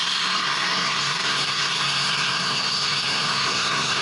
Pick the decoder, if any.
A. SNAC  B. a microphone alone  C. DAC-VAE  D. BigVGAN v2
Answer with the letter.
A